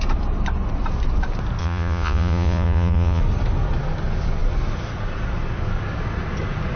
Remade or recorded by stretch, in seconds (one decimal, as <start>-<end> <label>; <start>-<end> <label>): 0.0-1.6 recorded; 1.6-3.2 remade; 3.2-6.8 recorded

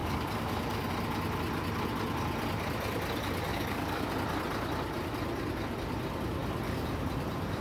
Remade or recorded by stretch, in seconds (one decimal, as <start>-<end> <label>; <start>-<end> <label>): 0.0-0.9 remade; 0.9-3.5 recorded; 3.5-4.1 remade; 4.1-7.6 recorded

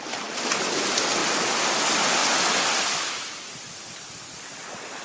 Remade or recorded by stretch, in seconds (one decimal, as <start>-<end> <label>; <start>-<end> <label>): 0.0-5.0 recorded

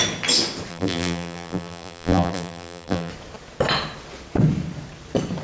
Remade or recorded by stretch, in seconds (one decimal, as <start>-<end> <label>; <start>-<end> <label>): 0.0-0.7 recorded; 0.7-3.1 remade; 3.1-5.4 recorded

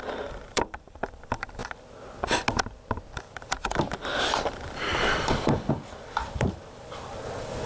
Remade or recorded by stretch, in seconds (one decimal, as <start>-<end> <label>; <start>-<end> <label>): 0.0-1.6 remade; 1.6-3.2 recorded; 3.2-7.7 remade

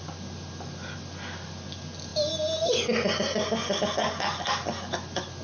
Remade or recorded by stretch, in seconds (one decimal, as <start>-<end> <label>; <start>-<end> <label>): 0.0-5.4 recorded